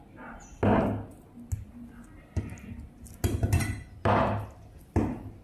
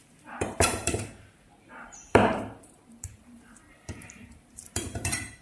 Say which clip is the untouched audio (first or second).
first